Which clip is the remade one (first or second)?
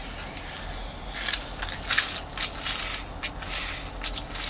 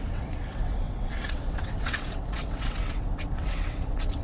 second